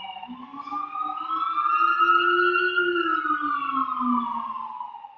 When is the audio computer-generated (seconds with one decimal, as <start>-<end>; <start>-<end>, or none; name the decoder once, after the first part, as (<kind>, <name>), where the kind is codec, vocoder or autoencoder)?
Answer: none